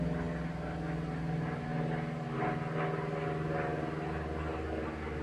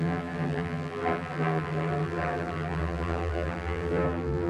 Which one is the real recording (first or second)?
first